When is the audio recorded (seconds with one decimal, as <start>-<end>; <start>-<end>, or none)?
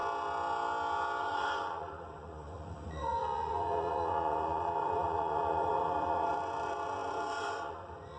0.0-1.2